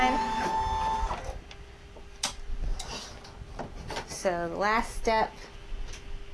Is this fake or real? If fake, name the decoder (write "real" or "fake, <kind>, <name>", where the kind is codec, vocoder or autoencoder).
real